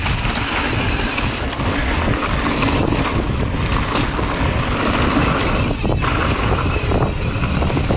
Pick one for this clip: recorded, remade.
recorded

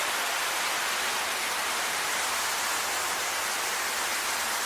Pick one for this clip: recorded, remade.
recorded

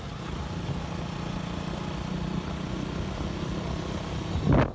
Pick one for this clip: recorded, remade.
recorded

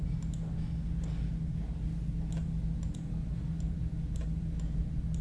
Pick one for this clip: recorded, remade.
recorded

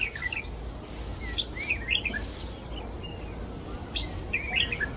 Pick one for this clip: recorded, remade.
recorded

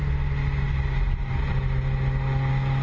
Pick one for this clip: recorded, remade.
recorded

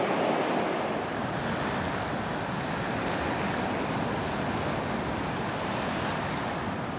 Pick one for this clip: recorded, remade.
recorded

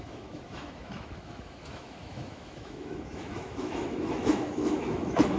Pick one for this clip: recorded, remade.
remade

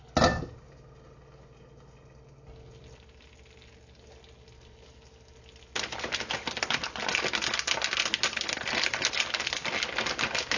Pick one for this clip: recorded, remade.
recorded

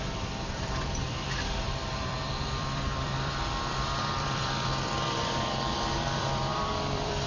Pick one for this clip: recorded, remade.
remade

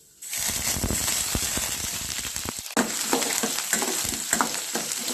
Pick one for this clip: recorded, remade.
remade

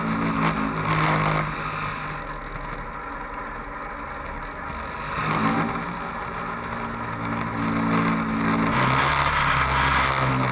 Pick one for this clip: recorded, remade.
recorded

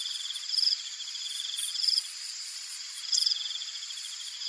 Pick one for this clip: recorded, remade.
remade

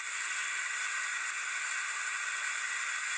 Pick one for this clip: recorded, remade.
recorded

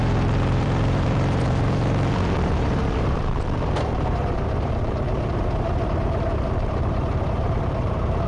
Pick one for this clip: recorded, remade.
remade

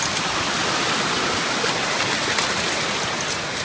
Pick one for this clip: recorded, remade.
recorded